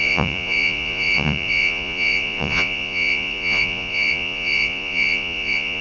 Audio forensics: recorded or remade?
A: remade